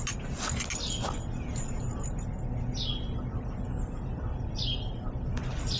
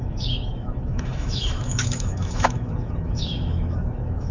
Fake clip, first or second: second